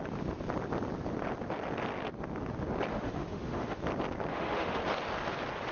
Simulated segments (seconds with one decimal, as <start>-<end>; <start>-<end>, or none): 2.9-3.8; 4.3-4.8